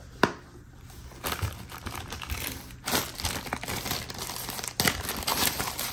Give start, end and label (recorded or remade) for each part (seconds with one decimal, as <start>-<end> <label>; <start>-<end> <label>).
0.0-5.3 recorded; 5.3-5.9 remade